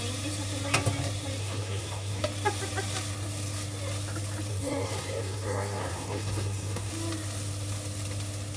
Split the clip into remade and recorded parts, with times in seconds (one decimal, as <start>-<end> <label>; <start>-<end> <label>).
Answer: 0.0-1.4 recorded; 1.4-2.2 remade; 2.2-4.5 recorded; 4.5-6.9 remade; 6.9-8.6 recorded